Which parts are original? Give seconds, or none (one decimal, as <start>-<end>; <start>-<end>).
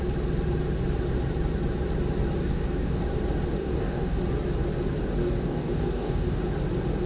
0.0-2.4; 3.0-3.6; 4.2-5.2; 6.4-7.1